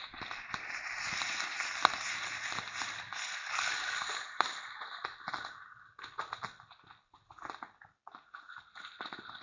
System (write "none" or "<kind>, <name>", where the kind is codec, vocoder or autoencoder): none